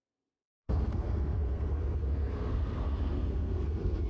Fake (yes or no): yes